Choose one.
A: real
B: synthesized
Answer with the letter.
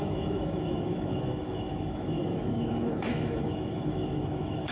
B